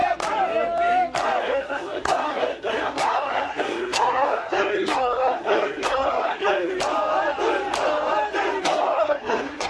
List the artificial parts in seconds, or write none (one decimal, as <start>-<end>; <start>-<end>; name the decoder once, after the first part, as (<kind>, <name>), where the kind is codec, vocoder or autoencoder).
1.4-6.7 (codec, SNAC); 8.6-9.7